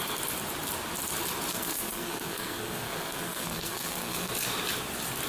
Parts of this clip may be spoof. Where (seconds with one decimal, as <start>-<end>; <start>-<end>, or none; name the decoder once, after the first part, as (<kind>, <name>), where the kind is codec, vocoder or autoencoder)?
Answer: 1.5-4.3 (codec, SNAC)